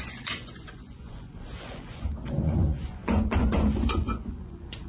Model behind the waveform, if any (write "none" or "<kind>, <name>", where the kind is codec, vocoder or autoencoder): vocoder, Vocos